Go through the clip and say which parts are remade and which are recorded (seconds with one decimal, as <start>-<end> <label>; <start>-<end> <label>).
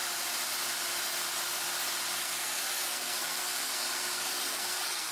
0.0-2.2 recorded; 2.2-5.1 remade